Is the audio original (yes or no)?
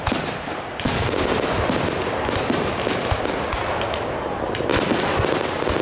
yes